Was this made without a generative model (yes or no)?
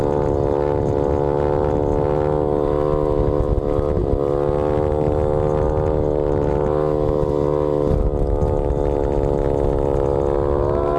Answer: yes